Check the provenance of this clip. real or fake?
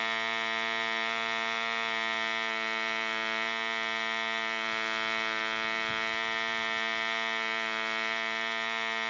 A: real